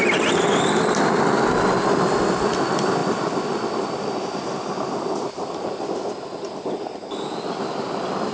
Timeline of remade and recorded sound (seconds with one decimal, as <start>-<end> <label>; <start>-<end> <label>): 0.0-8.3 recorded